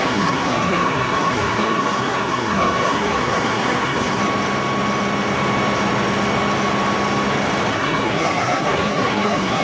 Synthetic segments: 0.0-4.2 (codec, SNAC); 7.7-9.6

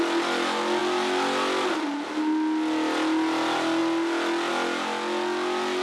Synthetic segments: none

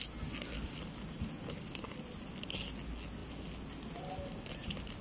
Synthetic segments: none

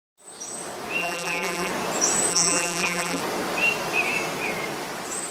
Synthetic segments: 1.0-1.7 (vocoder, BigVGAN v2); 2.3-3.2

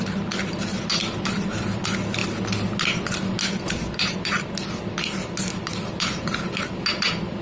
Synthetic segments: none

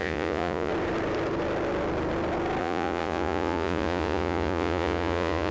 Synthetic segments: 0.0-0.7 (vocoder, Vocos); 2.6-5.5

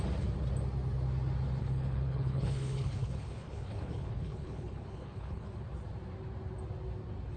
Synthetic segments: 1.6-5.6 (codec, HILCodec)

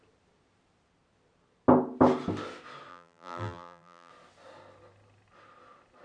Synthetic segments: 2.9-4.1 (vocoder, BigVGAN v2)